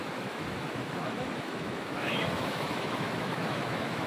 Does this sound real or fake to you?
fake